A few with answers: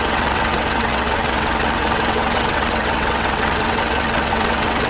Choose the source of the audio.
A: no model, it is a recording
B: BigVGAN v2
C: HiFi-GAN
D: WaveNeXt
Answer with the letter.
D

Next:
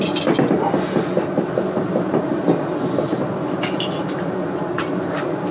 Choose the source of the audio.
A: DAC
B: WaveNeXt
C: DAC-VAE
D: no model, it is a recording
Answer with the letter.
D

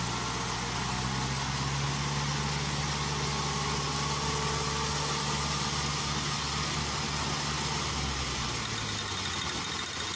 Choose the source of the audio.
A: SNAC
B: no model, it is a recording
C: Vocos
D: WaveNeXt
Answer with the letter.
B